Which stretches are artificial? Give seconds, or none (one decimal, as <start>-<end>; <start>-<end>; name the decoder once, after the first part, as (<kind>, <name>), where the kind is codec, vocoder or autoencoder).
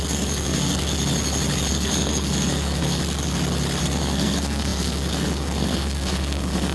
0.0-0.9 (codec, SNAC); 1.7-3.0; 3.8-6.7